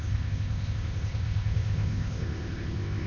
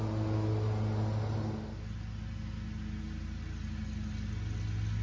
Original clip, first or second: second